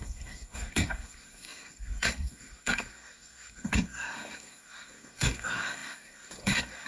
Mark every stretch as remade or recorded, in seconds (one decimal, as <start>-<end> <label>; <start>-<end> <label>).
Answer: 0.0-6.9 remade